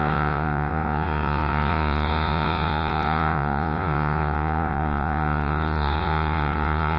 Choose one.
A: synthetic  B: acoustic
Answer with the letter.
A